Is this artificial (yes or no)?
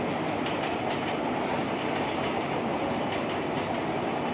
no